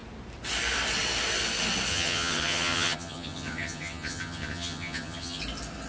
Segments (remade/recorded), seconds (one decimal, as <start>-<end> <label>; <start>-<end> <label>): 0.0-1.9 recorded; 1.9-5.4 remade; 5.4-5.9 recorded